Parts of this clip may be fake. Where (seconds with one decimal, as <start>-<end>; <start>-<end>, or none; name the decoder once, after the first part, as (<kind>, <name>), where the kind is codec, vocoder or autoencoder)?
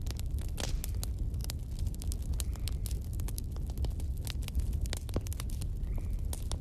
none